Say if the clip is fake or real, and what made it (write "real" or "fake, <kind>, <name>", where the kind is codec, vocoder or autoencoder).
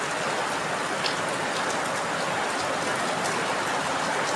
real